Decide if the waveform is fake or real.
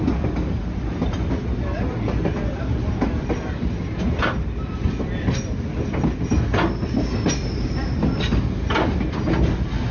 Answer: real